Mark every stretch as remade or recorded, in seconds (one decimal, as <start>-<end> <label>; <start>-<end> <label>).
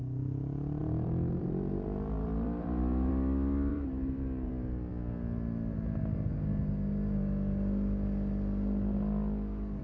0.0-0.8 recorded; 0.8-3.1 remade; 3.1-3.7 recorded; 3.7-4.5 remade; 4.5-9.8 recorded